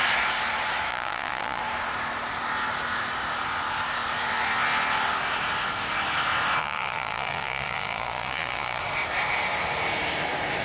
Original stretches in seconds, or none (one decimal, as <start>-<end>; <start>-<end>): 0.0-0.9; 1.6-6.6; 8.8-10.6